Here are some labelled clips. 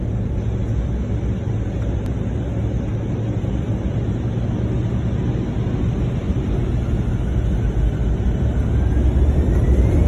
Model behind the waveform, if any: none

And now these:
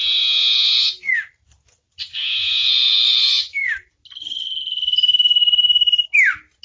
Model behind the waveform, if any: none